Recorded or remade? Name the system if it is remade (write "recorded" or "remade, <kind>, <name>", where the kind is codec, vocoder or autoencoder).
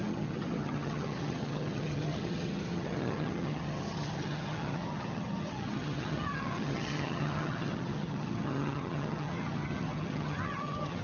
remade, vocoder, HiFi-GAN